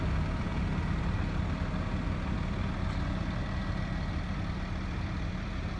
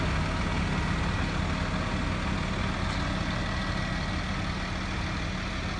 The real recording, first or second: second